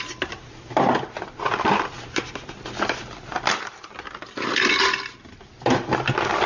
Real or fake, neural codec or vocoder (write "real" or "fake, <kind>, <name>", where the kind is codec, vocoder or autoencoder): real